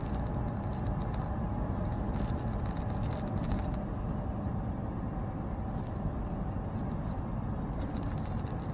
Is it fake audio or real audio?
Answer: real